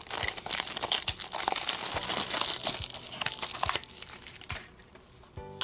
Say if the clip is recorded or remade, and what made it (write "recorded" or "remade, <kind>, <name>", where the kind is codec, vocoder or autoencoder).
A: recorded